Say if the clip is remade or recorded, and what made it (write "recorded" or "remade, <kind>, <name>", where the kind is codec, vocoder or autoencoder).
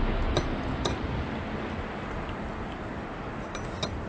recorded